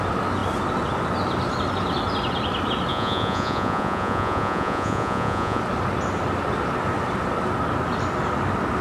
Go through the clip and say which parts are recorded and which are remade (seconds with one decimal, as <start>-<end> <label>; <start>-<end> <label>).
0.0-2.9 recorded; 2.9-5.6 remade; 5.6-8.8 recorded